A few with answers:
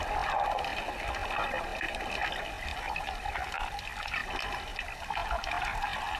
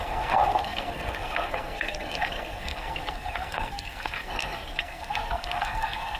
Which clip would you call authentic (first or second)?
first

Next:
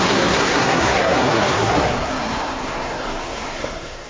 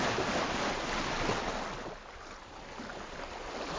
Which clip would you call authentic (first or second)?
second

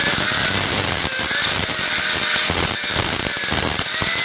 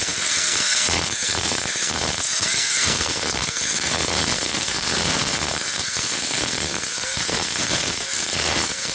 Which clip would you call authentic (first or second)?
first